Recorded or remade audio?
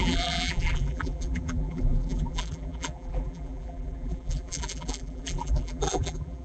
remade